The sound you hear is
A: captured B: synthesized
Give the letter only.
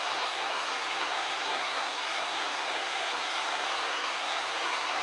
B